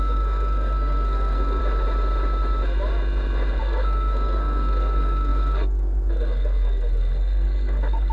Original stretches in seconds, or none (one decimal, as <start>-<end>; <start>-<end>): 1.6-3.6